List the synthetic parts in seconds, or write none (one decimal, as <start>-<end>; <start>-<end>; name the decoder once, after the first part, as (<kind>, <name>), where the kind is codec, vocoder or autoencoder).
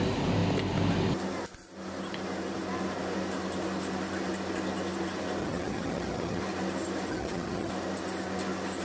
5.4-6.4 (vocoder, HiFi-GAN); 7.1-7.7